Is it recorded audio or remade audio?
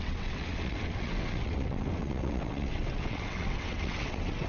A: remade